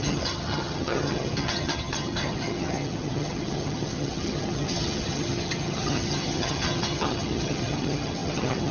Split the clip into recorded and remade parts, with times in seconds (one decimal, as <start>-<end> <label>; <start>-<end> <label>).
0.0-8.7 remade